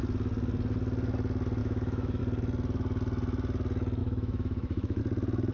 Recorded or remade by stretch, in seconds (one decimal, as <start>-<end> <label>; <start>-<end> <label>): 0.0-1.6 recorded; 1.6-2.2 remade; 2.2-4.0 recorded; 4.0-5.0 remade; 5.0-5.5 recorded